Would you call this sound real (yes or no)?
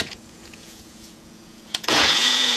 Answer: no